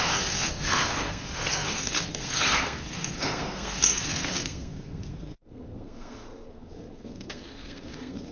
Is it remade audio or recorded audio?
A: remade